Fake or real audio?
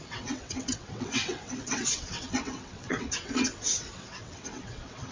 fake